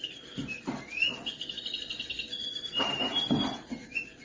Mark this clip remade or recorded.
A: recorded